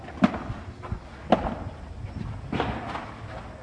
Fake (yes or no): no